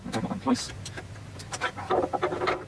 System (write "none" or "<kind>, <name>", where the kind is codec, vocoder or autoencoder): none